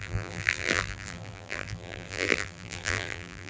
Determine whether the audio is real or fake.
fake